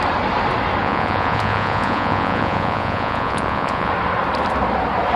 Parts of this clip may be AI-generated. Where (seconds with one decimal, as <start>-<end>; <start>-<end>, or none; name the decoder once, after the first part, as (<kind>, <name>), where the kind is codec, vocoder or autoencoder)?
0.8-3.9 (vocoder, Vocos)